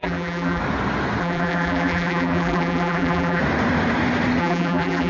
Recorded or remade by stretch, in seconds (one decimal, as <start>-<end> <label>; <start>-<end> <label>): 0.0-0.6 remade; 0.6-1.2 recorded; 1.2-3.4 remade; 3.4-4.4 recorded; 4.4-5.1 remade